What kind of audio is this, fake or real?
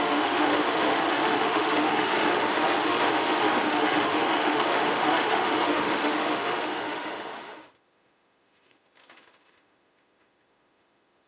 fake